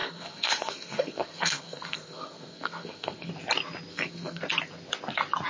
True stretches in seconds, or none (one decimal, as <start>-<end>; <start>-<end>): 3.3-3.9; 4.4-5.5